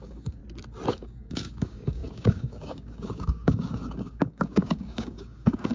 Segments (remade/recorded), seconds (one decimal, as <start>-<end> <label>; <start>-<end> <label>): 0.0-0.4 remade; 0.4-0.9 recorded; 0.9-5.7 remade